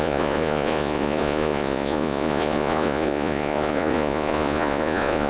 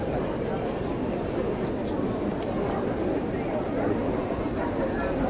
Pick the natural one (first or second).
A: second